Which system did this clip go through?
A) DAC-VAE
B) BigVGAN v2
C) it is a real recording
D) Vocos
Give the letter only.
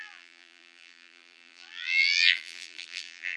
B